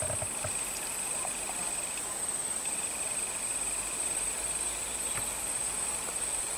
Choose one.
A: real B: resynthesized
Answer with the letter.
A